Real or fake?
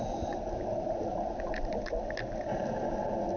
real